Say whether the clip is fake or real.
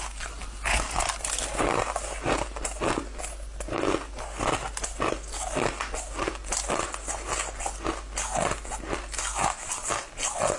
real